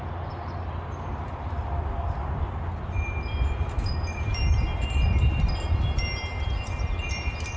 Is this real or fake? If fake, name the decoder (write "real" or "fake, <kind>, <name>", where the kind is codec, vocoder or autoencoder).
fake, vocoder, BigVGAN v2